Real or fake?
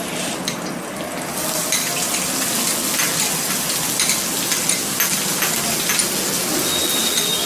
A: real